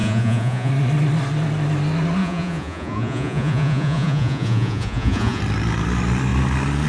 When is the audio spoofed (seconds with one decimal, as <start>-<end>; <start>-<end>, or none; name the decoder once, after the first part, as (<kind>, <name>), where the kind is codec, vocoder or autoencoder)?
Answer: 0.0-0.7 (vocoder, Vocos); 2.2-5.4